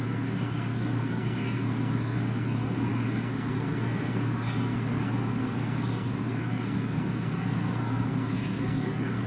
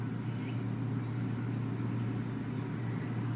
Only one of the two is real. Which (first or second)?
second